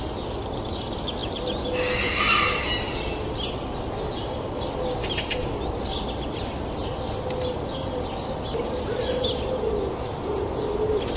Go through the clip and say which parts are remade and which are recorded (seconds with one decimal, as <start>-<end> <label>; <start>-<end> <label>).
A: 0.0-11.2 recorded